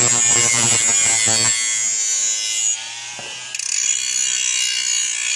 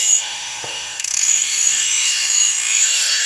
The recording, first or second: first